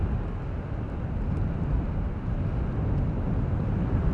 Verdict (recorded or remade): recorded